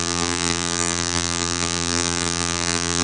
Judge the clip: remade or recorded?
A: remade